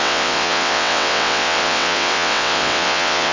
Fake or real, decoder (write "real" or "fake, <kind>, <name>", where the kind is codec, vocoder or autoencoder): fake, vocoder, WaveNeXt